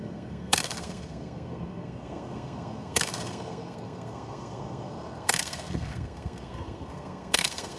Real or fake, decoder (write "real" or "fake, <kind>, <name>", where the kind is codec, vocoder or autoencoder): fake, codec, SNAC